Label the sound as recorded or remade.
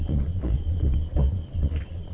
remade